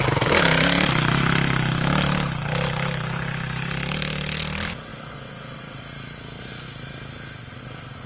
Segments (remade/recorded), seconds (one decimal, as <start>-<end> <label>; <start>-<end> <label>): 0.0-8.1 recorded